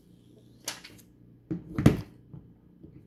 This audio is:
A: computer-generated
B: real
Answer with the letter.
B